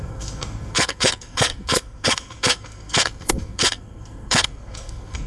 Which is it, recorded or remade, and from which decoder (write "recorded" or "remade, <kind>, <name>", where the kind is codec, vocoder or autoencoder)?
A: remade, codec, SNAC